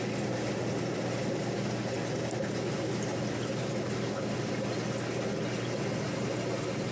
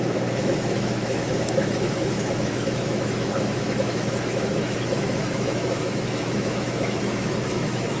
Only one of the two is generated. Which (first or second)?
second